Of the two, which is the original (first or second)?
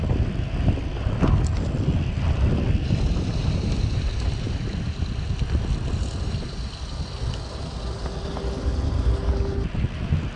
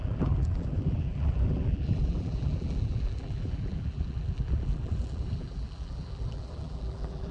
first